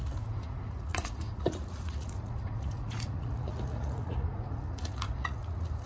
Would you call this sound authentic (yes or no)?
no